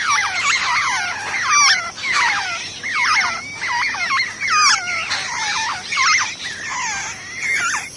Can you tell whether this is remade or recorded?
recorded